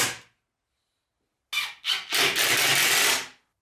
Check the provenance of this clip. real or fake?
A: real